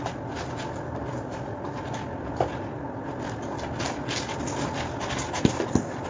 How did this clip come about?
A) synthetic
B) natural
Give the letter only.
B